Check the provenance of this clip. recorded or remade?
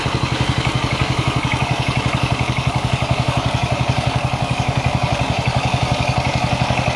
remade